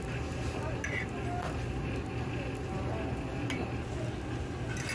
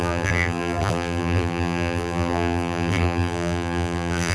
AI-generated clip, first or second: second